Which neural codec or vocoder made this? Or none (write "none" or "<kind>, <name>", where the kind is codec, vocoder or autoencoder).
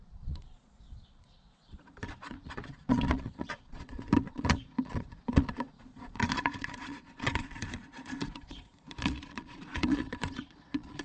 vocoder, Vocos